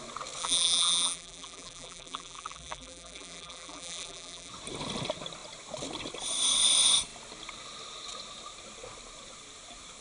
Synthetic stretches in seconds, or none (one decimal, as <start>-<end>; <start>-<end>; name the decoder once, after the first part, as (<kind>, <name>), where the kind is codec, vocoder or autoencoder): 0.4-4.5 (vocoder, BigVGAN v2)